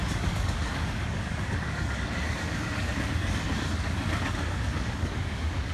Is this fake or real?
fake